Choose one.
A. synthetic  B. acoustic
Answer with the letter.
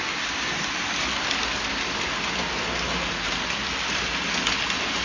B